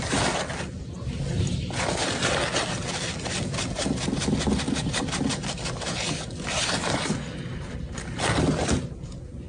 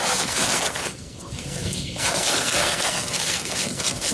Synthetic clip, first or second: second